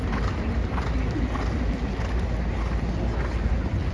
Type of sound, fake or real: real